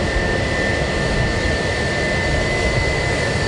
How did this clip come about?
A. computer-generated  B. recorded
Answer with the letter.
B